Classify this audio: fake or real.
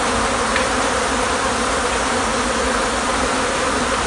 real